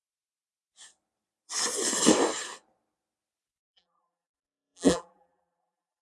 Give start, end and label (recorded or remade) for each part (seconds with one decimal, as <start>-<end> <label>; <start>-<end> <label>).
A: 0.0-3.6 recorded; 3.6-6.0 remade